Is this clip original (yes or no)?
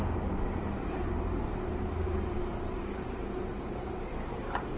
no